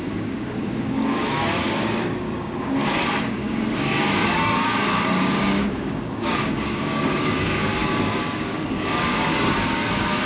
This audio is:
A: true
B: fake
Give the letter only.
B